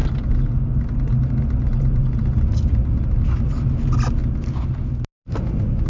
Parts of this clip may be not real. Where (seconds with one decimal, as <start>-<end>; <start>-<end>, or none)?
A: none